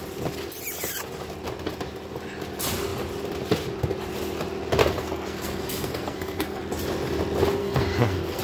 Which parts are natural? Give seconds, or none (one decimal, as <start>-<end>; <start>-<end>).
0.0-4.8; 6.6-7.6